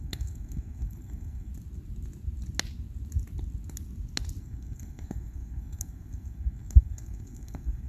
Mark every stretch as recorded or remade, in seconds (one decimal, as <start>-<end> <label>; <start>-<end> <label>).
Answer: 0.0-1.5 remade; 1.5-4.4 recorded; 4.4-7.9 remade